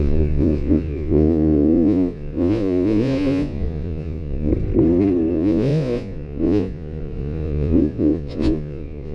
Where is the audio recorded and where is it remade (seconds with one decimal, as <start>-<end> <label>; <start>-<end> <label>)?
0.0-4.5 remade; 4.5-5.3 recorded; 5.3-9.1 remade